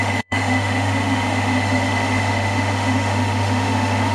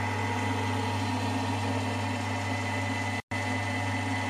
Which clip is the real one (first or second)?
second